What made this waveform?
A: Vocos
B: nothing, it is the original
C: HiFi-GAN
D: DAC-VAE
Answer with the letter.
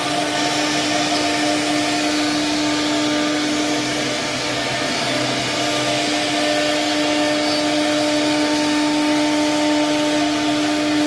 B